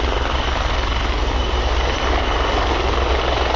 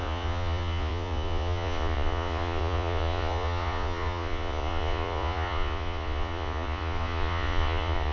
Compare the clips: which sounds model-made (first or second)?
second